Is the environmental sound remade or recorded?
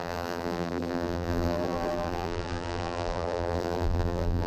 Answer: remade